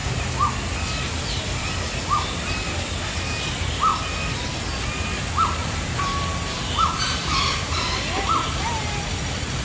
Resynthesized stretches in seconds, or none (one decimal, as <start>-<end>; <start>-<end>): 5.6-6.2